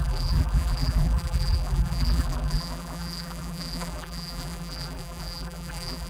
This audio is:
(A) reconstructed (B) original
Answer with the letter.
A